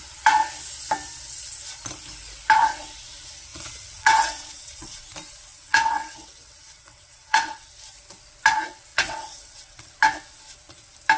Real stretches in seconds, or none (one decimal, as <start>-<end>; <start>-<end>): 0.0-3.5; 5.0-5.5; 7.7-8.9; 9.9-11.2